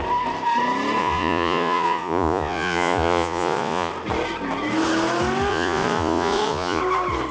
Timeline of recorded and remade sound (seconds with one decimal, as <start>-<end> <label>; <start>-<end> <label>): 0.0-1.0 recorded; 1.0-3.9 remade; 3.9-5.5 recorded; 5.5-6.8 remade; 6.8-7.3 recorded